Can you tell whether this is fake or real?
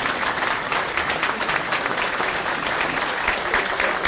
real